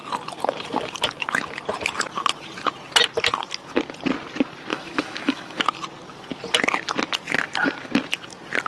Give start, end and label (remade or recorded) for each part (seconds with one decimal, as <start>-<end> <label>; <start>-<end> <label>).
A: 0.0-4.7 recorded; 4.7-5.6 remade; 5.6-8.7 recorded